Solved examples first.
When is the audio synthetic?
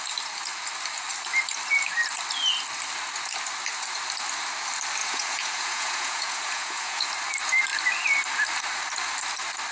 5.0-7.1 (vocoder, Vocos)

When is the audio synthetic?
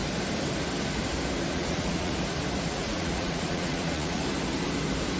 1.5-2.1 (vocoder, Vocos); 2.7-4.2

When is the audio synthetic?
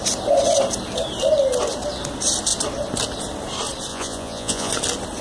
3.9-4.7 (vocoder, Vocos)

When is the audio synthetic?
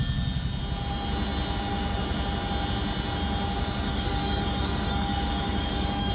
3.9-6.1 (codec, DAC)